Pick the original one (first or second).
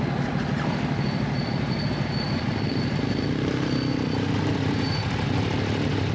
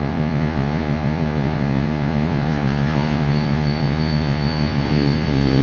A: first